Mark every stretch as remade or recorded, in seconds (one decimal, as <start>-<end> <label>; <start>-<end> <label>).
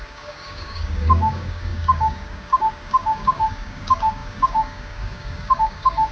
0.0-6.1 remade